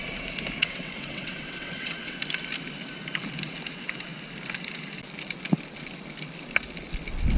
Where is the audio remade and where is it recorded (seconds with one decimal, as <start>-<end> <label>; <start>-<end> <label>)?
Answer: 0.0-0.6 recorded; 0.6-2.2 remade; 2.2-7.4 recorded